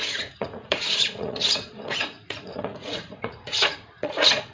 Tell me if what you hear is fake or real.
fake